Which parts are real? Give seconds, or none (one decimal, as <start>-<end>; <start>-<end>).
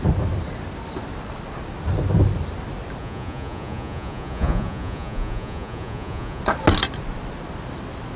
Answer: 0.0-3.0; 6.4-8.2